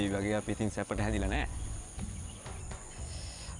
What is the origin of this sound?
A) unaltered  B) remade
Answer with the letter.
B